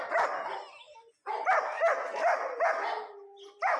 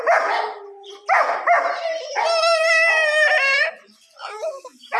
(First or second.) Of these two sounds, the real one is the first